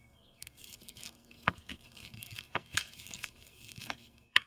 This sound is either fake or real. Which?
fake